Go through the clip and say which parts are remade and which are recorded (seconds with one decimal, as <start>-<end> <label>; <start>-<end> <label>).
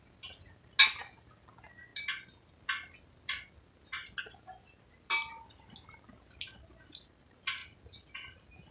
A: 0.0-8.7 recorded